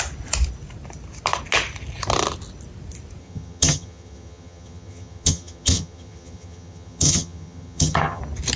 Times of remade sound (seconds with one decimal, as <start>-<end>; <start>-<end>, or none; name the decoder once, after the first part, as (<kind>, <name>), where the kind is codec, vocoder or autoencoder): 3.2-8.2 (vocoder, HiFi-GAN)